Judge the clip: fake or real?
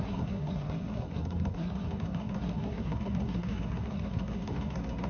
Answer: fake